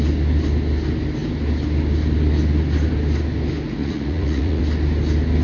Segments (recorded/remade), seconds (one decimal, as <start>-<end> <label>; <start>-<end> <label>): 0.0-3.8 recorded; 3.8-4.6 remade; 4.6-5.4 recorded